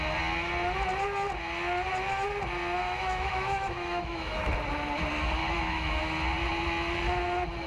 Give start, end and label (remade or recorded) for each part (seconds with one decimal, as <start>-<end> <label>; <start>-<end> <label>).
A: 0.0-2.8 recorded; 2.8-4.5 remade; 4.5-5.4 recorded; 5.4-6.0 remade; 6.0-7.7 recorded